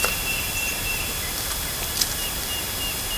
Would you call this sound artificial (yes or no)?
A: no